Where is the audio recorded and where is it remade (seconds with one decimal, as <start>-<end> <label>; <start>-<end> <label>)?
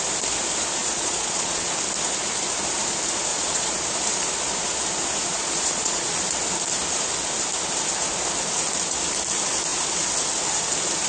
0.0-0.8 recorded; 0.8-1.7 remade; 1.7-3.3 recorded; 3.3-3.8 remade; 3.8-5.3 recorded; 5.3-6.2 remade; 6.2-11.1 recorded